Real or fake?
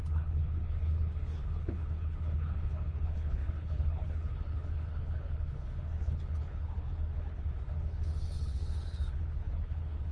fake